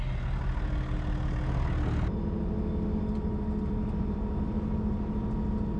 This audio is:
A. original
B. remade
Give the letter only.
A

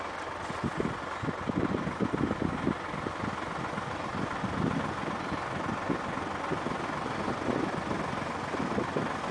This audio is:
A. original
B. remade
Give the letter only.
A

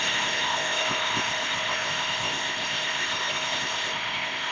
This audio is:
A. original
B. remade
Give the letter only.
B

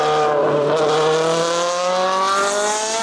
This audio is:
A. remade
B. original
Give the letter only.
B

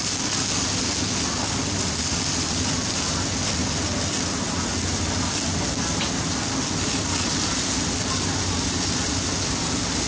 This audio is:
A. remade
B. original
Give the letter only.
B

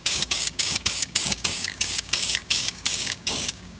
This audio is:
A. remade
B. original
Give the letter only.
A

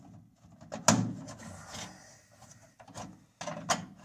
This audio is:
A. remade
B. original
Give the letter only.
B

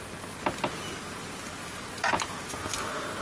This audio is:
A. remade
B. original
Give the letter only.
B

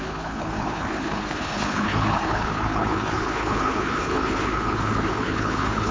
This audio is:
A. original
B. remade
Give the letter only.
B